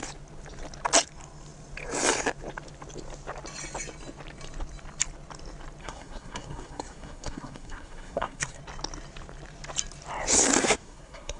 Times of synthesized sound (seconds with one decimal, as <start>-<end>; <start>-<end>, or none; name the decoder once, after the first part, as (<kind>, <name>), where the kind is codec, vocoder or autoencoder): 5.8-8.6 (codec, SNAC); 10.6-11.4